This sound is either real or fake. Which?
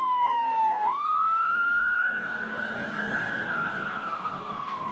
fake